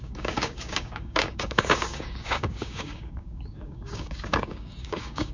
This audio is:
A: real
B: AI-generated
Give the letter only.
B